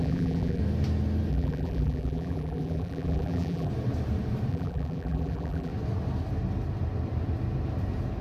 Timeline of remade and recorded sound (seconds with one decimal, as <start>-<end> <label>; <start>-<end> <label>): 0.0-0.6 remade; 0.6-1.3 recorded; 1.3-3.7 remade; 3.7-4.5 recorded; 4.5-5.7 remade; 5.7-8.2 recorded